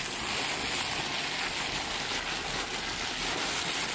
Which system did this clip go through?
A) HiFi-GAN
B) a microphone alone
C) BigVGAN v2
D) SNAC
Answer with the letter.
B